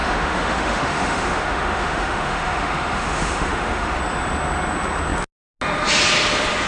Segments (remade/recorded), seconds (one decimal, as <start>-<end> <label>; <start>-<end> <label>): 0.0-4.0 remade; 4.0-6.7 recorded